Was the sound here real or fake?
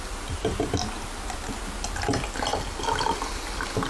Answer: real